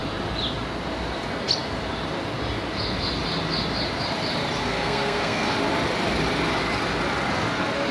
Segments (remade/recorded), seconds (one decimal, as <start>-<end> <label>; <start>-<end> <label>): 0.0-4.6 recorded; 4.6-5.5 remade; 5.5-7.9 recorded